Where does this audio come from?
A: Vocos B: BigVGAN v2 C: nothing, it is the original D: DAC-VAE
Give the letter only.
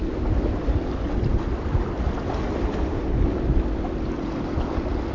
C